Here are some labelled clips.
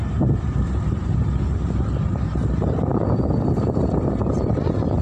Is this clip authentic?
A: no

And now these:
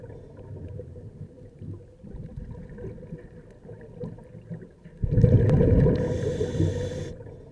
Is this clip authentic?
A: yes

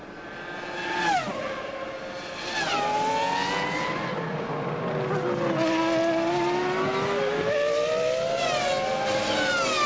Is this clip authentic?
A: yes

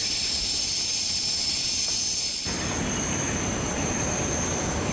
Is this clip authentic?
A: no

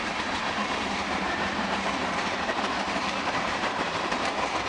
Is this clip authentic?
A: no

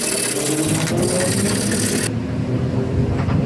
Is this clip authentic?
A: yes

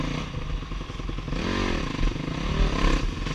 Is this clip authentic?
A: yes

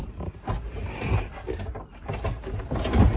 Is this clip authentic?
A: yes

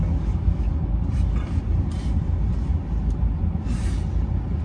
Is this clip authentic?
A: yes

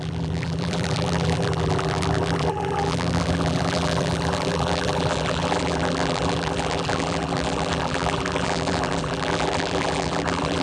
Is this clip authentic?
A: no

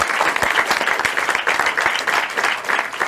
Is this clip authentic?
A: yes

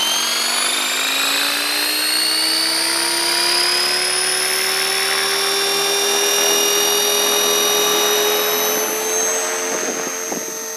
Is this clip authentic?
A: yes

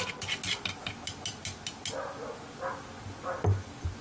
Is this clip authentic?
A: yes